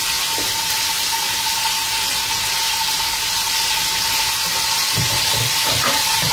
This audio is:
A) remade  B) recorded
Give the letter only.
B